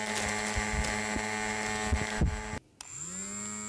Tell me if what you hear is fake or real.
real